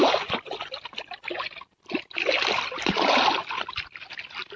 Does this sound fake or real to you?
real